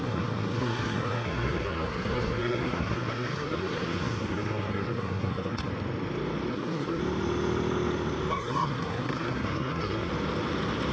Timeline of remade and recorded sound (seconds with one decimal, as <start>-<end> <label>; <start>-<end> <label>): 0.0-5.7 remade; 5.7-6.5 recorded; 6.5-7.0 remade; 7.0-8.3 recorded; 8.3-10.1 remade; 10.1-10.9 recorded